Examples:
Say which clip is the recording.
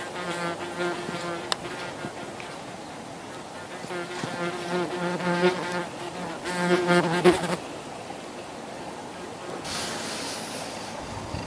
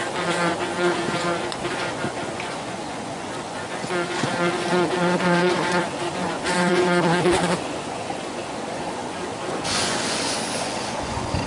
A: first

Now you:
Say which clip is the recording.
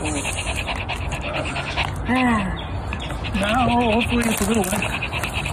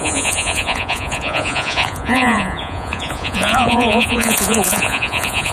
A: first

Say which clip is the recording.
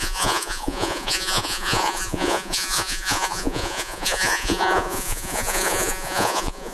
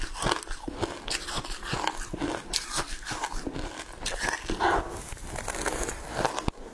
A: second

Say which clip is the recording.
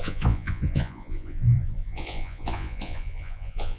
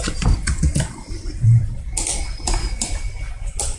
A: second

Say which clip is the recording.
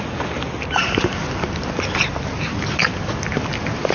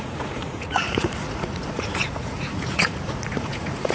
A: first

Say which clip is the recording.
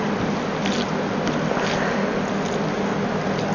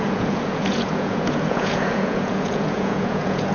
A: first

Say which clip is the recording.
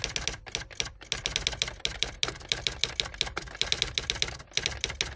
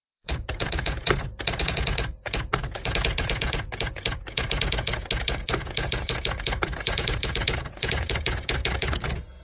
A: first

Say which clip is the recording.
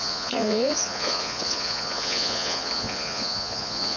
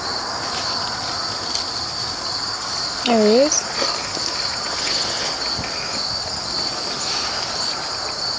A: second